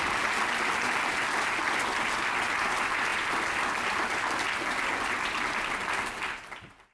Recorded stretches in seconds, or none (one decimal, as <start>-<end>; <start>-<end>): 0.0-6.9